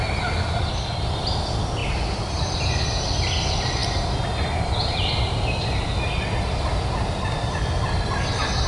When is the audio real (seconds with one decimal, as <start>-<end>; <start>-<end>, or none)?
0.0-1.8; 2.6-8.7